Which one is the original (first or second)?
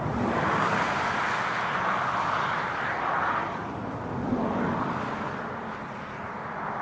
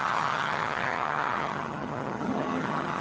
first